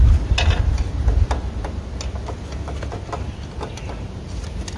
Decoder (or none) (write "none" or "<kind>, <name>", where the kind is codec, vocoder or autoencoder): none